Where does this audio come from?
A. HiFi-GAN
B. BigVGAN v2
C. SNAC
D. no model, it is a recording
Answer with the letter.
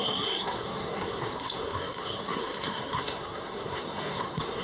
C